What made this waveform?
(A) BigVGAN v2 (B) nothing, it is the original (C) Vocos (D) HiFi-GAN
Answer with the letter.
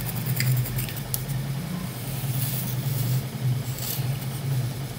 B